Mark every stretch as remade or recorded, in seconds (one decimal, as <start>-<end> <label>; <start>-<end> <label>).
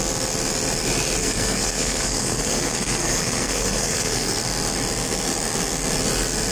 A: 0.0-1.2 recorded; 1.2-4.4 remade; 4.4-6.5 recorded